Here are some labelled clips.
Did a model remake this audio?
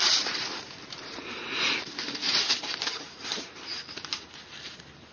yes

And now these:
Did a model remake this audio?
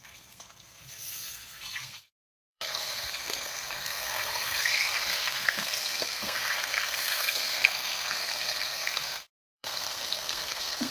yes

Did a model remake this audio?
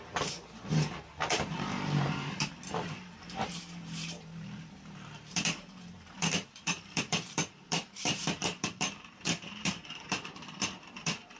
yes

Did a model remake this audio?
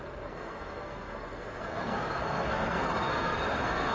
yes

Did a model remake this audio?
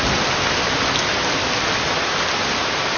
no